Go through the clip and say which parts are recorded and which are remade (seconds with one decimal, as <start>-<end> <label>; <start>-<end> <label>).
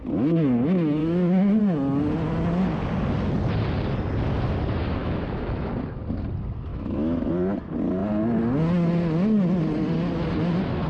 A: 0.0-1.0 recorded; 1.0-1.6 remade; 1.6-5.0 recorded; 5.0-5.7 remade; 5.7-6.7 recorded; 6.7-7.3 remade; 7.3-10.9 recorded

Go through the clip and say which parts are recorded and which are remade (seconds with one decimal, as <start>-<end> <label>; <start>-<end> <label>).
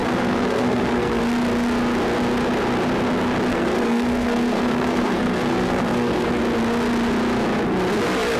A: 0.0-1.2 remade; 1.2-3.5 recorded; 3.5-6.4 remade; 6.4-8.4 recorded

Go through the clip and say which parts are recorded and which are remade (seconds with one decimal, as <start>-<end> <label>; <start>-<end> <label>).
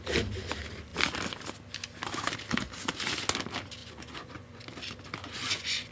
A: 0.0-3.8 recorded; 3.8-4.6 remade; 4.6-5.2 recorded; 5.2-5.9 remade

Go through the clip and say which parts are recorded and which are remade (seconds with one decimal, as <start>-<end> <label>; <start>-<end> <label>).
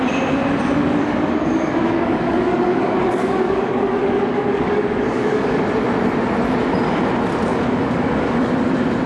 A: 0.0-0.8 recorded; 0.8-5.6 remade; 5.6-7.5 recorded; 7.5-8.5 remade; 8.5-9.1 recorded